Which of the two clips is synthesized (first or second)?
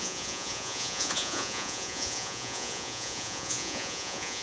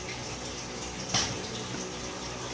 first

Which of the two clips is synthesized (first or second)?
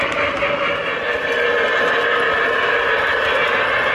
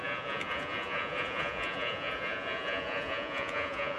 second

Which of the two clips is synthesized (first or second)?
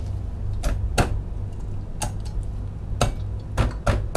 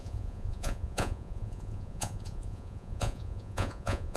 second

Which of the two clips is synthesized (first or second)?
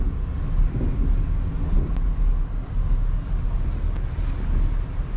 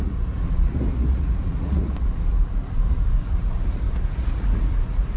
second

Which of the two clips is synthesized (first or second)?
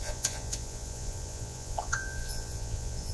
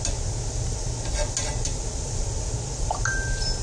first